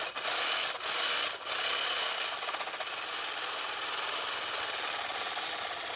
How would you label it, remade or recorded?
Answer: recorded